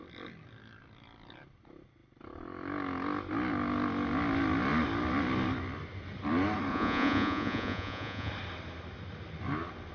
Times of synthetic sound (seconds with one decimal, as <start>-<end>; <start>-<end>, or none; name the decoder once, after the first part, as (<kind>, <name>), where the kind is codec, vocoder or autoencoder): 6.7-8.3 (vocoder, Vocos)